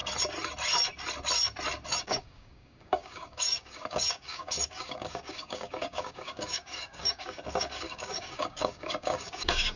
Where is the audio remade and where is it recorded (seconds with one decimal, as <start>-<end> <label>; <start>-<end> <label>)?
0.0-2.0 recorded; 2.0-9.8 remade